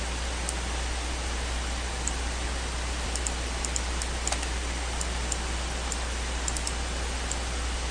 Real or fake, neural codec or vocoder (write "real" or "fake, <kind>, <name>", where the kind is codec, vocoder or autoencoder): real